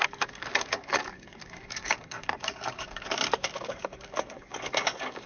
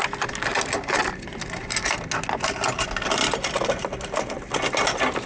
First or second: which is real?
second